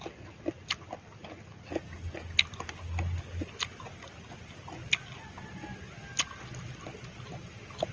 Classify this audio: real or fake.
real